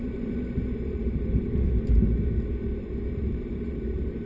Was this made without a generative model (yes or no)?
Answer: no